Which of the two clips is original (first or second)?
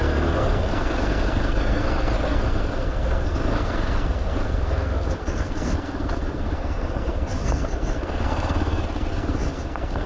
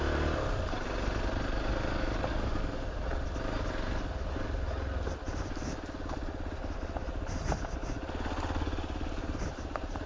second